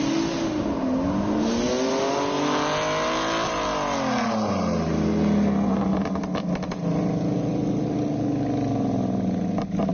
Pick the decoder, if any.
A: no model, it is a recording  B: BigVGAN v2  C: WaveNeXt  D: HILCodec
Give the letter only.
A